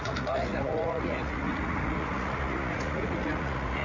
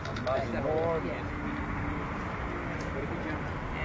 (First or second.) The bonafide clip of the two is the second